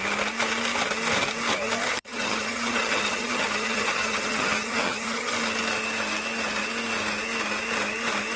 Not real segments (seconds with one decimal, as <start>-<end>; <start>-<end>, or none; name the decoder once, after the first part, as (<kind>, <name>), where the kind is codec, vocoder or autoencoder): 1.9-5.3 (vocoder, HiFi-GAN)